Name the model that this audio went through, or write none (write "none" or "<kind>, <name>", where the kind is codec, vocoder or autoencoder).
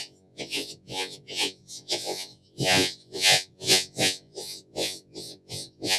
vocoder, Vocos